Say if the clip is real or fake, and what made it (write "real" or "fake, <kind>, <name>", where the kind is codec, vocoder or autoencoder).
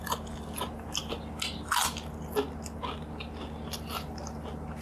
real